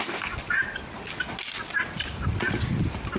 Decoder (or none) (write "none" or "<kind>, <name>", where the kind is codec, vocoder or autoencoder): none